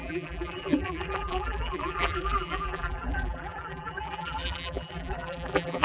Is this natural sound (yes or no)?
no